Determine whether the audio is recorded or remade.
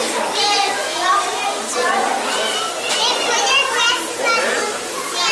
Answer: recorded